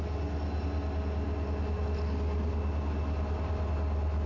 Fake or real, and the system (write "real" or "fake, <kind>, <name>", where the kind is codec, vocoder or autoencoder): real